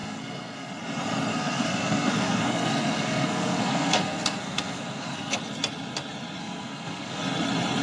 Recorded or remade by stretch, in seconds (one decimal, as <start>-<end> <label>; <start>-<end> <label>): 0.0-0.7 remade; 0.7-1.3 recorded; 1.3-5.4 remade; 5.4-6.4 recorded; 6.4-7.2 remade; 7.2-7.8 recorded